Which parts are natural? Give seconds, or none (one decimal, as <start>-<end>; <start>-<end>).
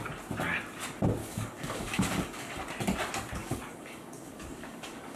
0.0-1.2; 2.6-3.4